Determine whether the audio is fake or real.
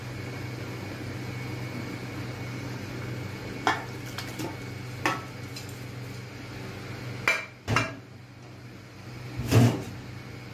real